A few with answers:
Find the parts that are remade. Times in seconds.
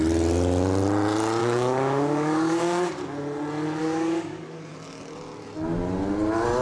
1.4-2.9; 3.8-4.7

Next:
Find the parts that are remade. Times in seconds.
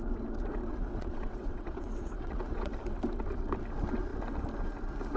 0.7-2.7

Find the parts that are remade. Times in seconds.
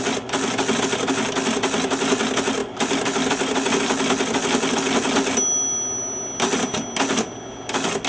2.6-3.8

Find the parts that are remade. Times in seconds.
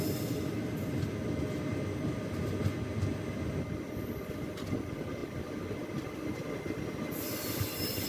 none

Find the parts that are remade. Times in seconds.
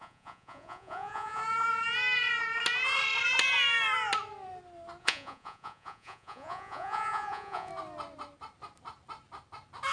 0.0-1.4; 5.0-7.7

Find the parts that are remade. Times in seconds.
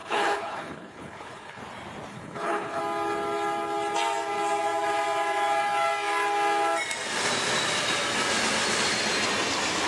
0.0-1.6; 2.1-2.8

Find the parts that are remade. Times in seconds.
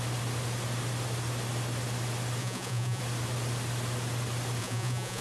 2.4-3.0; 4.6-5.2